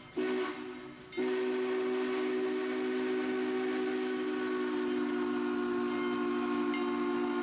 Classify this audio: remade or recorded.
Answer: recorded